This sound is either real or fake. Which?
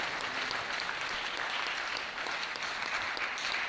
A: real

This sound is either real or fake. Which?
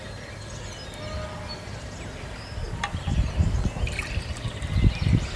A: real